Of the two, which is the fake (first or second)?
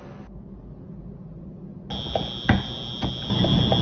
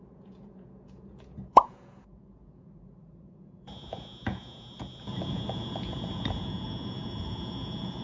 second